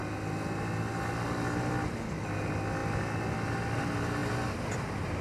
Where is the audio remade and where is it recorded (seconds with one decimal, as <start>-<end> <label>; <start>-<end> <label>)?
0.0-5.2 recorded